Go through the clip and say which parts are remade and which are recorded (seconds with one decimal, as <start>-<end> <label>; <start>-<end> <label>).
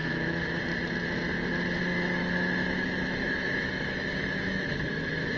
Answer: 0.0-0.6 remade; 0.6-1.9 recorded; 1.9-5.4 remade